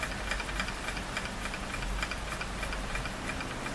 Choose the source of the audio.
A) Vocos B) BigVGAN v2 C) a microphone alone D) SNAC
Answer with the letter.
C